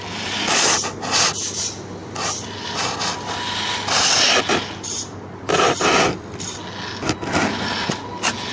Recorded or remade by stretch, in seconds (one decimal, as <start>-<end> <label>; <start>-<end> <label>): 0.0-8.5 recorded

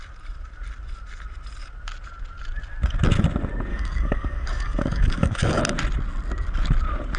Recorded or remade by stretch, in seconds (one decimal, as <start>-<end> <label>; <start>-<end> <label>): 0.0-3.7 recorded; 3.7-5.6 remade; 5.6-7.2 recorded

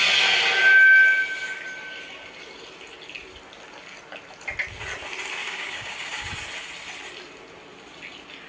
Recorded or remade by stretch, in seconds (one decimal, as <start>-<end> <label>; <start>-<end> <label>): 0.0-5.4 recorded; 5.4-6.3 remade; 6.3-8.5 recorded

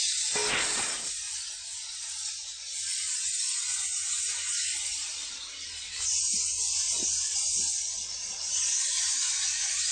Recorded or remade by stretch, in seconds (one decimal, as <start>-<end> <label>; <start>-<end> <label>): 0.0-9.9 recorded

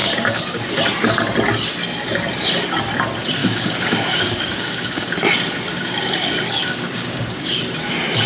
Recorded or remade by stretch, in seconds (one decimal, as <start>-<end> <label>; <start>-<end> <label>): 0.0-0.7 remade; 0.7-3.4 recorded; 3.4-5.1 remade; 5.1-5.7 recorded; 5.7-7.6 remade; 7.6-8.3 recorded

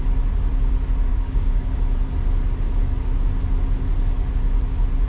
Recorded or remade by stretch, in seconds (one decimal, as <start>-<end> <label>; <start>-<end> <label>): 0.0-1.1 recorded; 1.1-1.7 remade; 1.7-5.1 recorded

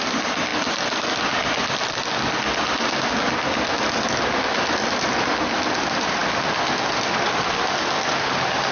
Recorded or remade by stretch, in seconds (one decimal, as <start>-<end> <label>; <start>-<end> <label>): 0.0-8.7 recorded

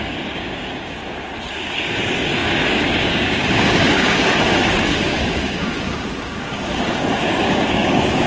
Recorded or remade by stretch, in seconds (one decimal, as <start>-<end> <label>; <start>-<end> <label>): 0.0-1.0 remade; 1.0-1.5 recorded; 1.5-8.3 remade